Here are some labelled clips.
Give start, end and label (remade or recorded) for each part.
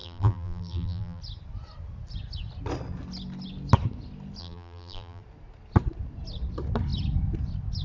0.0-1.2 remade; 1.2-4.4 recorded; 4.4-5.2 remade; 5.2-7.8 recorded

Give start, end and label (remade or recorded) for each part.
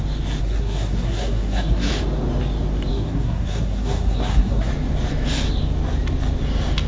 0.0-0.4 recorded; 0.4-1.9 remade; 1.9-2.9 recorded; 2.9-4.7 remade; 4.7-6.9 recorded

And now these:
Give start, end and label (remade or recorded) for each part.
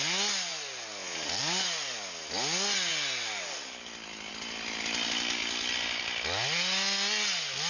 0.0-7.7 recorded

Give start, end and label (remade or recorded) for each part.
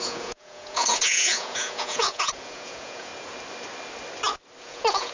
0.0-3.1 remade; 3.1-4.6 recorded; 4.6-5.1 remade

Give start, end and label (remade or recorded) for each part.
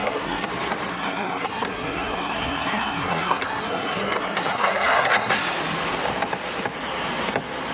0.0-0.5 remade; 0.5-0.9 recorded; 0.9-5.4 remade; 5.4-7.7 recorded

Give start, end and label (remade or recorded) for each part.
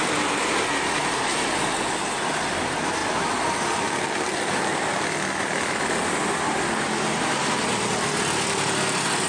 0.0-9.3 recorded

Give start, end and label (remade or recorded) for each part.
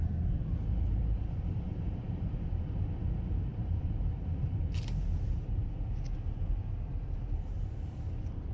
0.0-1.0 recorded; 1.0-2.6 remade; 2.6-3.5 recorded; 3.5-4.1 remade; 4.1-6.9 recorded; 6.9-7.5 remade; 7.5-8.5 recorded